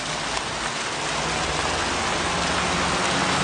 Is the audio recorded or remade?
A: recorded